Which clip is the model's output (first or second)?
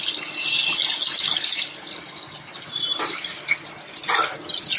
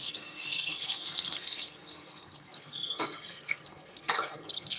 second